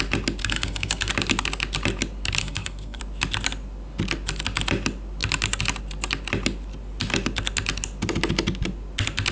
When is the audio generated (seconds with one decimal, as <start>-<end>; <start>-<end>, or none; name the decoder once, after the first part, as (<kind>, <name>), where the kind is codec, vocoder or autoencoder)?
0.4-1.1 (codec, SNAC); 2.4-3.0